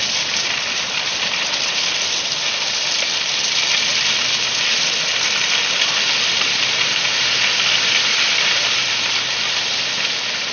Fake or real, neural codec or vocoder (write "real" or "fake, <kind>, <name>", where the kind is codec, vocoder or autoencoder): fake, vocoder, BigVGAN v2